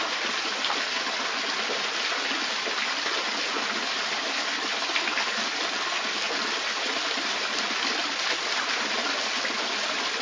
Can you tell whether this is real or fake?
fake